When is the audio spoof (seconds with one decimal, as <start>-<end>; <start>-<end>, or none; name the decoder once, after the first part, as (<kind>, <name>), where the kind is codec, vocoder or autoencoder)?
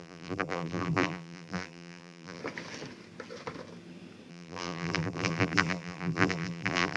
0.0-2.4 (vocoder, BigVGAN v2); 4.3-7.0